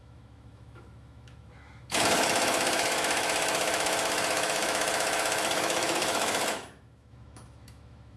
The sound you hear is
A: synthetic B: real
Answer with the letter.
A